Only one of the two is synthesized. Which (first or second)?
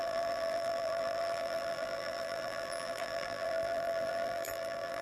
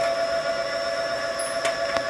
first